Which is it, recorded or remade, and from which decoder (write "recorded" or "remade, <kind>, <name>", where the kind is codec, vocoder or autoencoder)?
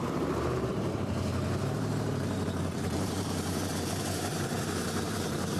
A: remade, vocoder, BigVGAN v2